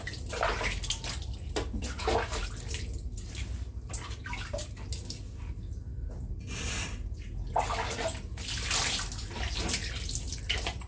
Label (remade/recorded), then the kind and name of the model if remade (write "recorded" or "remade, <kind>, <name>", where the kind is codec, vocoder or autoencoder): recorded